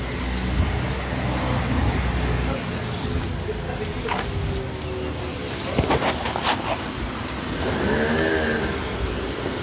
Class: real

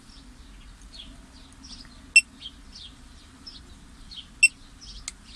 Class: real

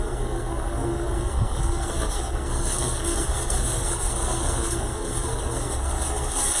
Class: fake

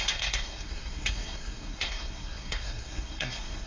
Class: fake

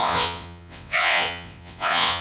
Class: fake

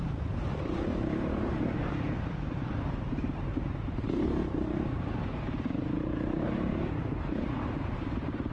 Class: fake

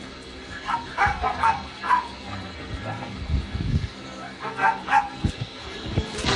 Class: fake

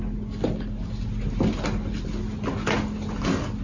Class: real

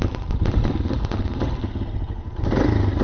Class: real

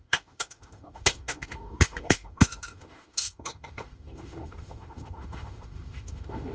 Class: fake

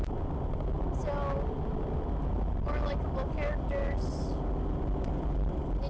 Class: real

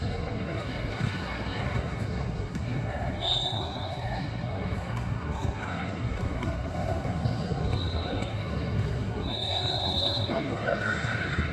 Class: fake